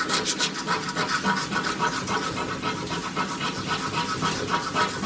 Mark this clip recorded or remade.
recorded